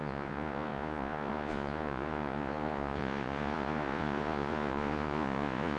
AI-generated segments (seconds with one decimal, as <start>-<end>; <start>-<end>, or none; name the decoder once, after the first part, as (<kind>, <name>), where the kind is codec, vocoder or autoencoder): 0.0-5.8 (vocoder, Vocos)